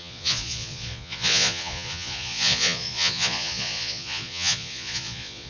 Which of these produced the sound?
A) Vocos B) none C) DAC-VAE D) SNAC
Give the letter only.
A